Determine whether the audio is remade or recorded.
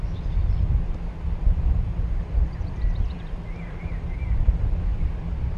remade